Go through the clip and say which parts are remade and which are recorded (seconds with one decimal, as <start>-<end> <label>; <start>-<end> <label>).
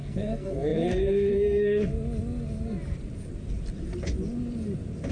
0.0-1.9 remade; 1.9-5.1 recorded